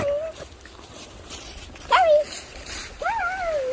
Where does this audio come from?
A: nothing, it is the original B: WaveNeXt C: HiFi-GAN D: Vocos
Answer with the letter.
A